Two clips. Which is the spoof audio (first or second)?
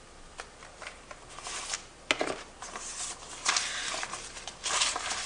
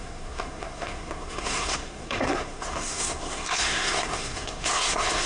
second